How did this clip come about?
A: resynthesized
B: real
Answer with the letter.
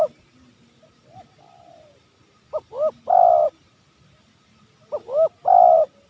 B